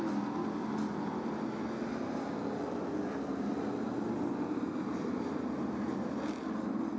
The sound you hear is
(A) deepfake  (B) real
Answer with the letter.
B